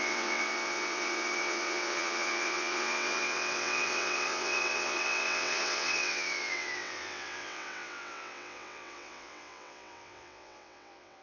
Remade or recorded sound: remade